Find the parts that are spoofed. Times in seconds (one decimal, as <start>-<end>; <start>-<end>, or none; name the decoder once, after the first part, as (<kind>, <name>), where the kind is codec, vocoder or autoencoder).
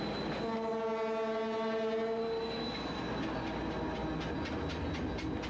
none